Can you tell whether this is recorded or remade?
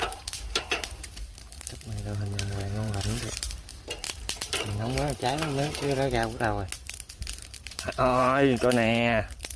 remade